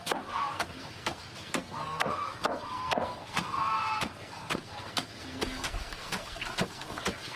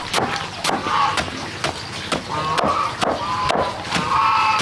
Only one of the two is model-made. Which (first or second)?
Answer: first